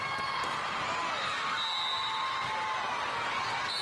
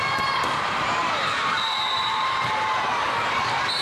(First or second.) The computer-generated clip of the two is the second